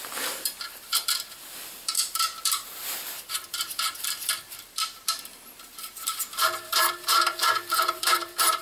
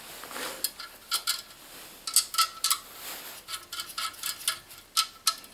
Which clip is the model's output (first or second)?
first